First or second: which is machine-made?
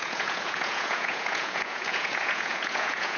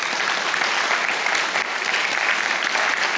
first